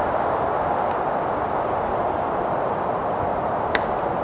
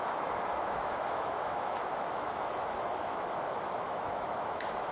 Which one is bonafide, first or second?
first